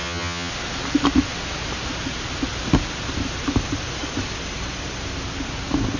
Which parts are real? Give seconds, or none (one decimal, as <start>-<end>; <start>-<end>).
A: 0.5-6.0